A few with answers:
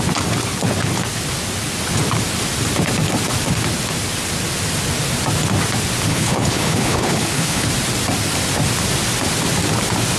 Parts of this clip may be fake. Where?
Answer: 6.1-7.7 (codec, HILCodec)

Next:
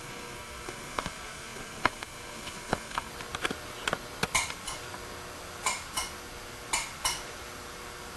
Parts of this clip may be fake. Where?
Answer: 0.0-3.1 (codec, SNAC)

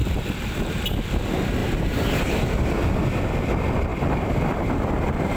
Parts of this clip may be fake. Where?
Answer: 0.0-0.8 (vocoder, BigVGAN v2); 1.6-2.2; 3.9-5.4